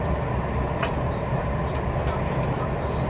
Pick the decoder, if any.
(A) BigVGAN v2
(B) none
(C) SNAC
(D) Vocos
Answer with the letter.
B